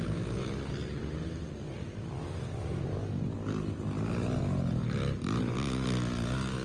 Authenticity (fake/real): real